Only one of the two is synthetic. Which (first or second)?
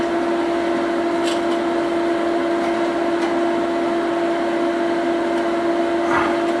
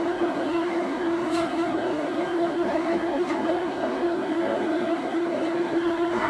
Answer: second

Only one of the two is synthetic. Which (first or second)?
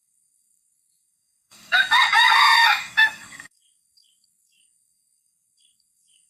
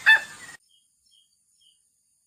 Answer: first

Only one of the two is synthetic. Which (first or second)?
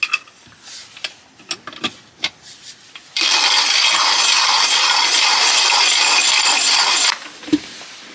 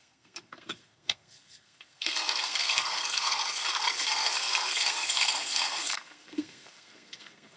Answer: second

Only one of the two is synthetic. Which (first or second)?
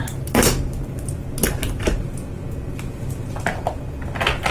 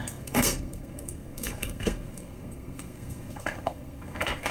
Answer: second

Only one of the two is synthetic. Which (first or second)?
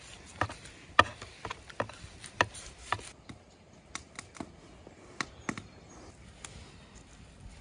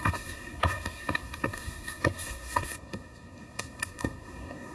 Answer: second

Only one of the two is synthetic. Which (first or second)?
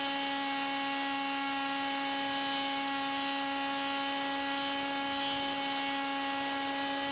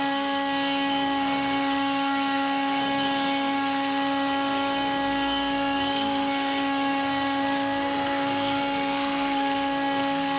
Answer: second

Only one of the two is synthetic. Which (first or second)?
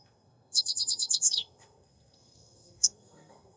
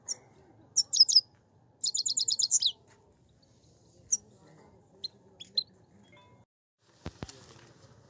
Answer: first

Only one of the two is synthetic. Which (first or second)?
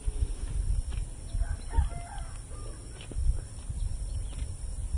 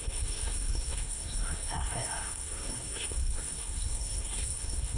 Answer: second